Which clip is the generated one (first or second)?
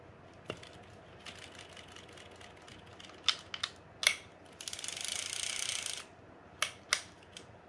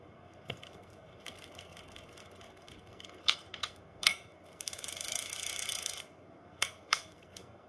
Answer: second